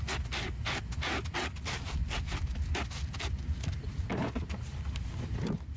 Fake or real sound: real